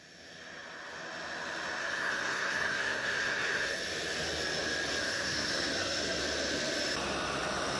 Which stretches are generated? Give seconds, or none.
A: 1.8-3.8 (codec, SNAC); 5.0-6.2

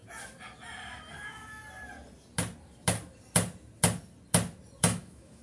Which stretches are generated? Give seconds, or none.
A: 1.2-1.6 (autoencoder, DAC-VAE); 4.8-5.4

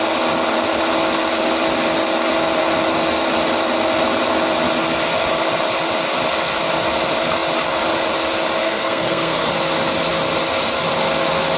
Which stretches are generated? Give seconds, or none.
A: 8.6-9.5 (codec, SNAC)

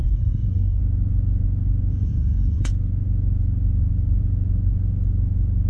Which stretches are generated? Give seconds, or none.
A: 0.0-0.8 (codec, SNAC); 1.9-2.7

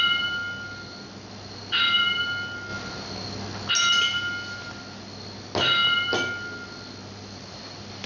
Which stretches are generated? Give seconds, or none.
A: none

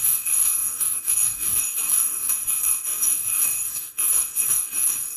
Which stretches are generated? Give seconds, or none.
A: 0.0-5.2 (codec, DAC)

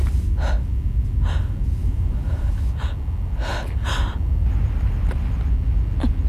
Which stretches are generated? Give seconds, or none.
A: 1.8-2.5 (vocoder, BigVGAN v2)

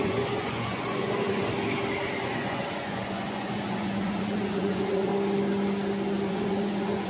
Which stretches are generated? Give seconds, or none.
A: 0.0-1.4 (vocoder, Vocos); 2.2-5.1; 6.3-7.1